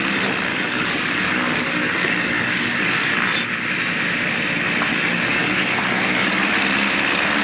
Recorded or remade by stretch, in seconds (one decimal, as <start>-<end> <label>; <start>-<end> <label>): 0.0-0.5 recorded; 0.5-3.1 remade; 3.1-4.9 recorded; 4.9-6.3 remade; 6.3-7.4 recorded